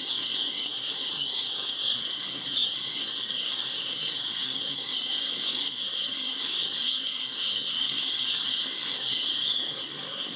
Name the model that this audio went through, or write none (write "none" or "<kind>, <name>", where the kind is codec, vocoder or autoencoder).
codec, SNAC